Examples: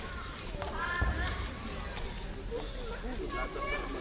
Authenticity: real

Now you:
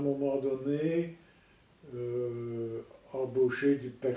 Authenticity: real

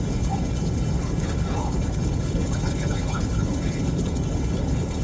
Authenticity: fake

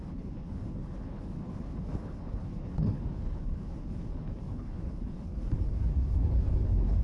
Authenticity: fake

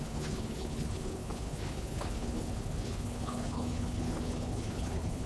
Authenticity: fake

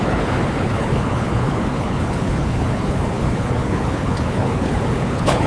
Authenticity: fake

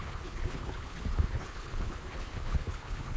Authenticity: fake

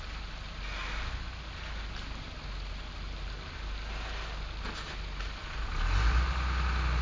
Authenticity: real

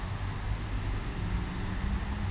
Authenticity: real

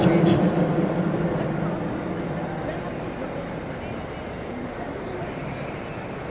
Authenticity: real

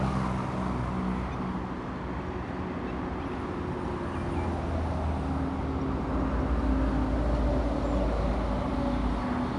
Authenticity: real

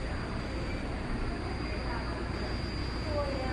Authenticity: real